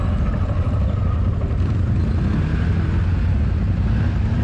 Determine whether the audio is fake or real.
real